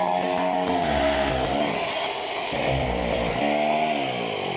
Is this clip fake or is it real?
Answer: real